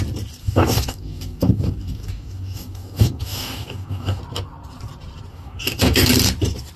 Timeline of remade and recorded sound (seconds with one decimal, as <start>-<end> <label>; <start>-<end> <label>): 0.0-0.4 recorded; 0.4-4.2 remade; 4.2-5.3 recorded; 5.3-6.1 remade; 6.1-6.8 recorded